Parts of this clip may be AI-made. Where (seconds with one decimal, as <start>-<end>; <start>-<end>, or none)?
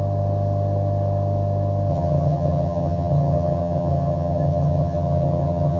1.9-5.8